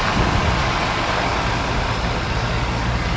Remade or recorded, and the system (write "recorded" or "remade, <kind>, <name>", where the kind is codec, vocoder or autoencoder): recorded